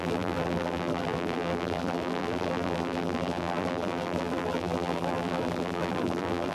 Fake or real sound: fake